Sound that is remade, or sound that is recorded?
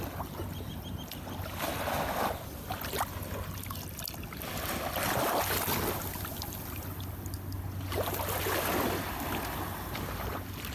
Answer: recorded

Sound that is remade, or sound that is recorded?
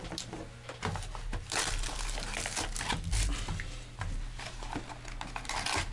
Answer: recorded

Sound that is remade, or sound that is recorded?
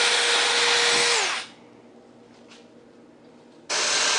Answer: recorded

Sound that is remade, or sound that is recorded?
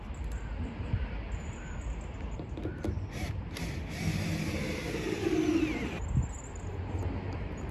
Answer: recorded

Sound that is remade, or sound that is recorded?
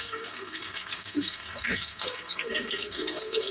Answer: remade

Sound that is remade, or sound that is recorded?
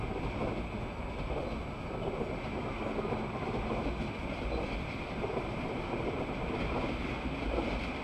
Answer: recorded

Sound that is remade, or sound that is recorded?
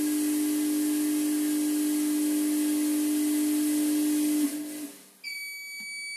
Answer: recorded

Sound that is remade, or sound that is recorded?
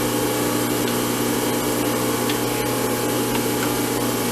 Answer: recorded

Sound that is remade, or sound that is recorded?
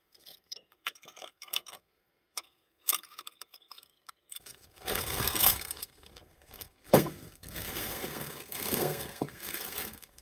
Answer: remade